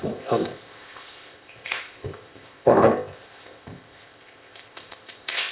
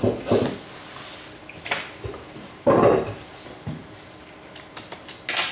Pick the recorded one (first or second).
second